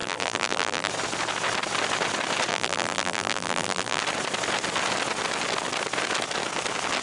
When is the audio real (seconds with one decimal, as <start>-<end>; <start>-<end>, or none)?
0.9-2.5; 4.0-7.0